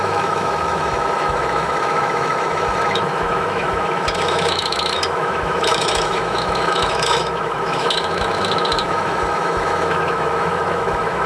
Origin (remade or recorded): remade